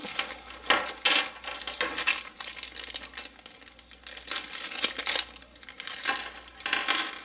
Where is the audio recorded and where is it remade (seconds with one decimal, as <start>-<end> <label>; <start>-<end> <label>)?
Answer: 0.0-7.2 recorded